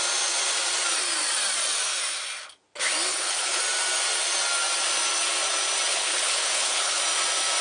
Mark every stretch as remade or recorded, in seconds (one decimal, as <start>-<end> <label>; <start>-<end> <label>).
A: 0.0-3.1 recorded; 3.1-3.6 remade; 3.6-5.9 recorded; 5.9-7.0 remade; 7.0-7.6 recorded